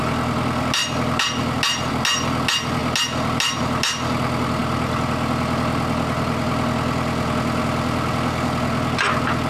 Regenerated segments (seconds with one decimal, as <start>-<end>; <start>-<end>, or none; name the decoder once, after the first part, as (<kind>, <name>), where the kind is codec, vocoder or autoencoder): none